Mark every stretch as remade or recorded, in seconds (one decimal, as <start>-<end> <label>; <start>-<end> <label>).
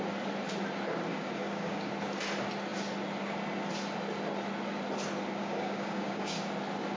0.0-1.1 recorded; 1.1-1.9 remade; 1.9-5.4 recorded; 5.4-6.4 remade; 6.4-7.0 recorded